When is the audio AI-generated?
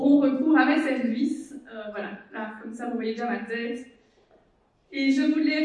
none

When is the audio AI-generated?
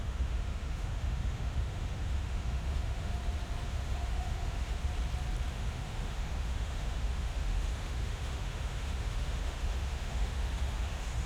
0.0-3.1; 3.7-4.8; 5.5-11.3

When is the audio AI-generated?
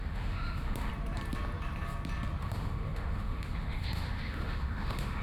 0.0-0.9; 2.4-5.2